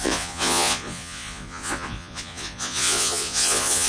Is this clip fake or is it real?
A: fake